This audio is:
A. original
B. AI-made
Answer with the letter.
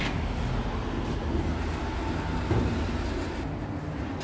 A